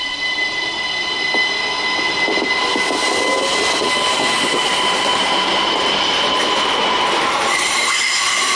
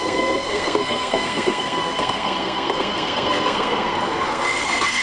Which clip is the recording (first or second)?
first